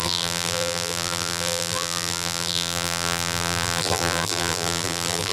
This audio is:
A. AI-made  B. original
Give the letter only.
A